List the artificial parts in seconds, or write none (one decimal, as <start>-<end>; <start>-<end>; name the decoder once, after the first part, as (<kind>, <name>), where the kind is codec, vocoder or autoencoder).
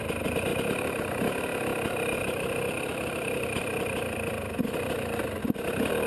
0.5-1.2 (vocoder, BigVGAN v2); 1.7-5.4